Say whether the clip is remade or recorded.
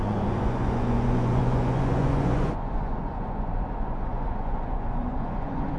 remade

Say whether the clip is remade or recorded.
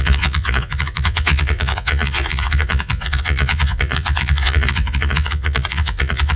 remade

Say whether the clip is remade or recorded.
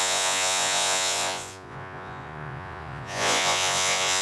remade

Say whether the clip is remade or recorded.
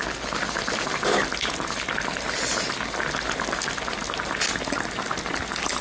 recorded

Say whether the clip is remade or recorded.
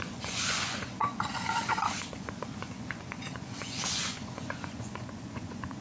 remade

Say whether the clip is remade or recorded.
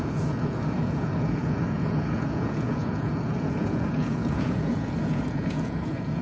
remade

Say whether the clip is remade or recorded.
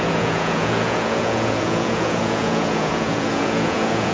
remade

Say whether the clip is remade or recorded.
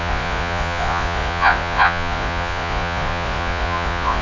remade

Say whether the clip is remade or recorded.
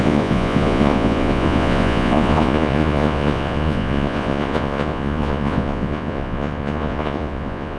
remade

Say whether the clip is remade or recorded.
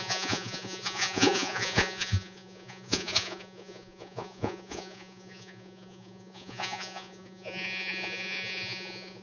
remade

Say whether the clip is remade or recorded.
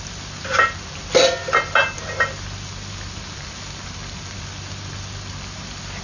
recorded